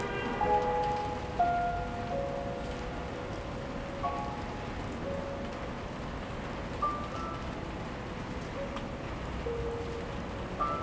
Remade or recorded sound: recorded